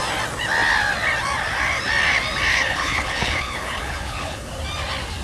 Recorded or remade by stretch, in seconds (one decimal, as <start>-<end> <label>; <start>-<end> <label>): 0.0-2.5 recorded; 2.5-4.5 remade; 4.5-5.2 recorded